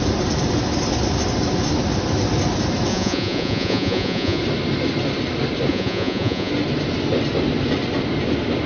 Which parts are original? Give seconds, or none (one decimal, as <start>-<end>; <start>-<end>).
0.0-2.9; 4.4-5.7; 6.5-8.7